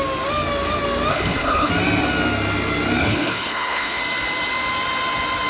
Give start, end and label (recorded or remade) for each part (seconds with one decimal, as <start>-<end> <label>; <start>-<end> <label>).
0.0-1.1 recorded; 1.1-1.7 remade; 1.7-3.0 recorded; 3.0-4.0 remade; 4.0-5.5 recorded